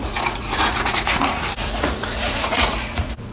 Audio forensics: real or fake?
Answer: fake